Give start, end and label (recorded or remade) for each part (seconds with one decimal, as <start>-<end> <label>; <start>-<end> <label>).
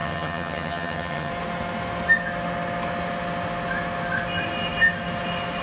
0.0-1.3 remade; 1.3-5.6 recorded